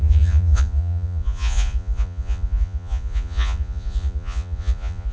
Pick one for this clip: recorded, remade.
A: remade